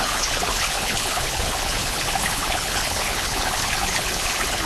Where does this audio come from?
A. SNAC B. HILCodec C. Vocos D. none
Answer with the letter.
B